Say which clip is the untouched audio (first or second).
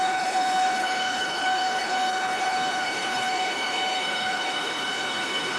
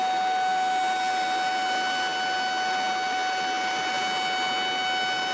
second